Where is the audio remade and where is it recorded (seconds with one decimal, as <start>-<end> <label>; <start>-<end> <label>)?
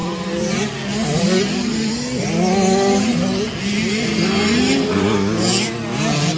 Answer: 0.0-6.4 recorded